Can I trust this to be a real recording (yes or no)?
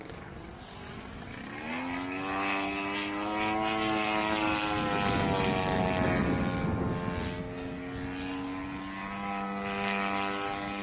yes